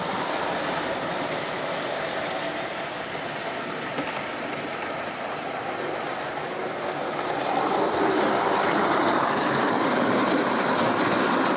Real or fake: real